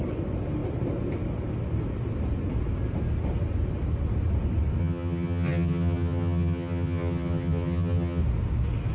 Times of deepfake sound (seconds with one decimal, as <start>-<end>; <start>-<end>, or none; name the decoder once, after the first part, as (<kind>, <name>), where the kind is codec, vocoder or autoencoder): 4.8-8.2 (vocoder, HiFi-GAN)